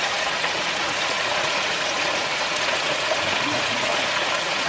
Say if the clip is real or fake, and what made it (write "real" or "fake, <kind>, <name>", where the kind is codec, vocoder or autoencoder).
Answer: fake, vocoder, Vocos